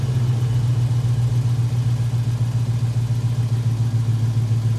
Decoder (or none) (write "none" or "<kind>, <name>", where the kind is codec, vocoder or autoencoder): none